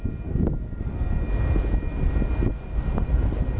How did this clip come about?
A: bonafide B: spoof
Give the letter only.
A